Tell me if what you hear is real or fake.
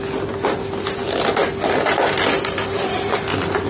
real